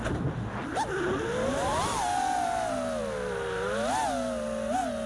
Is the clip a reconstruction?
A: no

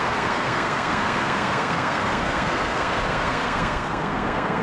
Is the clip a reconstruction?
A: yes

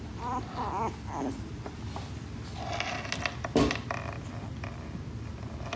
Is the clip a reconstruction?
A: no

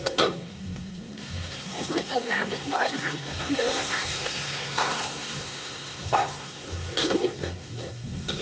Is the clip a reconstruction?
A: yes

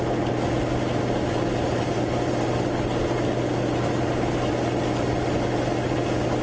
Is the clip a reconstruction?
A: no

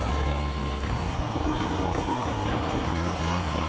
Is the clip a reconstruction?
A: yes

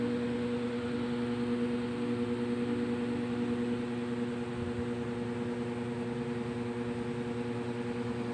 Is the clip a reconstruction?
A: no